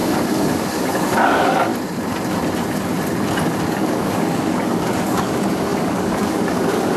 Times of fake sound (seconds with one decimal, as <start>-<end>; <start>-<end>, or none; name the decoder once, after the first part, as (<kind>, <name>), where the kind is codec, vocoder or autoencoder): 0.0-1.7 (codec, DAC); 3.7-7.0